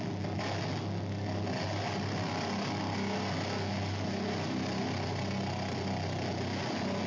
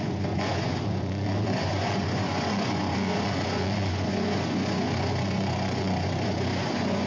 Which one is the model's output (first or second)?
second